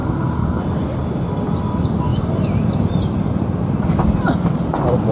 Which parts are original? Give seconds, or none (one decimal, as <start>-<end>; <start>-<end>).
0.6-5.1